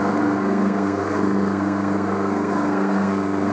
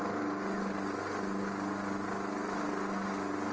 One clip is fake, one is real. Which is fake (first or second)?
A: first